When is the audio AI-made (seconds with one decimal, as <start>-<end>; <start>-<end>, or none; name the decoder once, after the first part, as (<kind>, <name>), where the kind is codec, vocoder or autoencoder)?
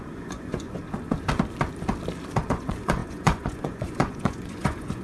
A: 0.0-0.8 (vocoder, Vocos); 2.5-5.0